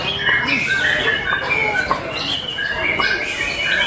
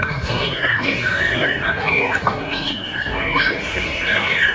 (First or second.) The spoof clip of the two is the second